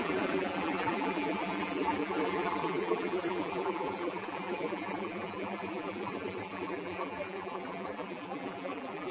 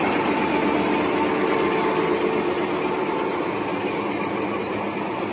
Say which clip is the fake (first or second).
first